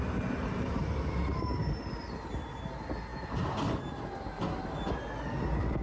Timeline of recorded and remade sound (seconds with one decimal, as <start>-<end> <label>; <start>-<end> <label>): 0.0-0.4 recorded; 0.4-1.5 remade; 1.5-5.8 recorded